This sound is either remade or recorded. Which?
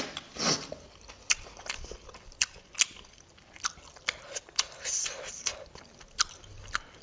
recorded